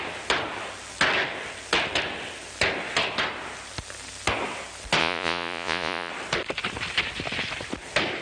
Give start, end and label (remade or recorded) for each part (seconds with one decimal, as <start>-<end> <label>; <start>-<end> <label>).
0.0-5.0 recorded; 5.0-6.1 remade; 6.1-8.2 recorded